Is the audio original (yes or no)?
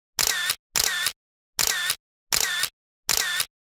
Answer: yes